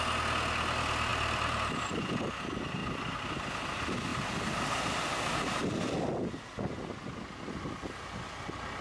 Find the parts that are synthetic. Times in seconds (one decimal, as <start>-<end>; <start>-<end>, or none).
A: 1.1-2.0; 2.8-3.5; 4.1-4.9